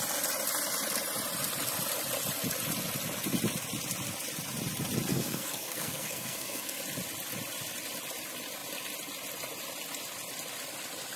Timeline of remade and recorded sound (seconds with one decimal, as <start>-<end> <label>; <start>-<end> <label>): 0.0-5.1 recorded; 5.1-6.8 remade; 6.8-11.2 recorded